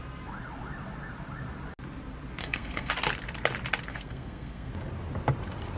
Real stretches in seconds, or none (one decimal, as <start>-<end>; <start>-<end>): 0.0-2.4; 2.9-3.9; 4.7-5.8